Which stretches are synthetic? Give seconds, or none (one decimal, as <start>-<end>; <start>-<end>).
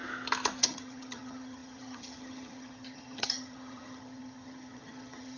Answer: 0.6-5.4